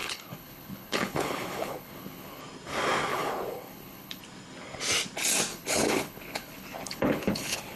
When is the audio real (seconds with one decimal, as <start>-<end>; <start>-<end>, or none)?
2.4-3.1; 4.2-5.5